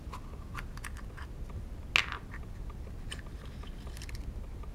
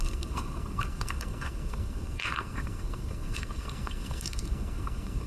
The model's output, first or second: second